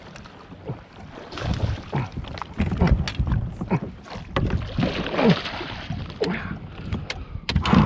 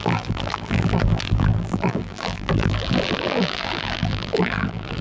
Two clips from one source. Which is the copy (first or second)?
second